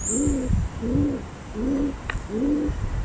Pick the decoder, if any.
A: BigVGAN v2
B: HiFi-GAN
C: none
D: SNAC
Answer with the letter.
C